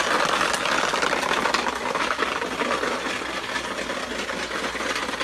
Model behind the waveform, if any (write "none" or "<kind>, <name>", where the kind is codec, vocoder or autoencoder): none